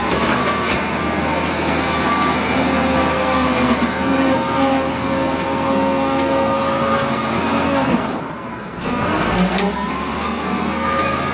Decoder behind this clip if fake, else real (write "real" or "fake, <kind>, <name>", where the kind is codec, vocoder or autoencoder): fake, codec, SNAC